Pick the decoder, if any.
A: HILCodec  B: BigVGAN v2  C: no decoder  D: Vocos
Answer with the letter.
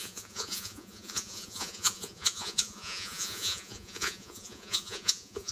D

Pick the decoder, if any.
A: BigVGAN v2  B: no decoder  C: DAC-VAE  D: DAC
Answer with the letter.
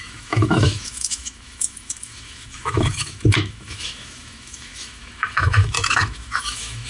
C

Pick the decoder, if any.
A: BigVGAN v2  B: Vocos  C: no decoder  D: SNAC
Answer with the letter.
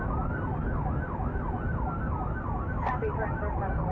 C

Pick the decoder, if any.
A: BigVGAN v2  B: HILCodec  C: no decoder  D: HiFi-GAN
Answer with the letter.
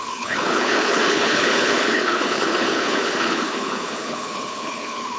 B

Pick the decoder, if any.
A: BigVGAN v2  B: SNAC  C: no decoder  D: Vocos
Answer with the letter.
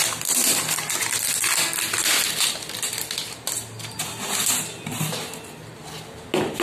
C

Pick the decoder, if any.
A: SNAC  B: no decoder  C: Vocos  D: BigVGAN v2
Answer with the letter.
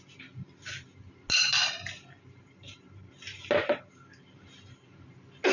B